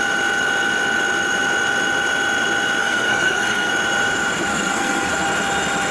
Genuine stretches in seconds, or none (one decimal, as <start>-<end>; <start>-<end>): 0.0-2.8; 3.7-4.5; 5.1-5.9